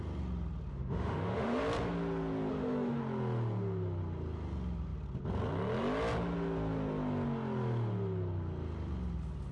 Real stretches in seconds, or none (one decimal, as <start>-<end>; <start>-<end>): 0.0-0.7; 1.6-2.5; 3.0-9.5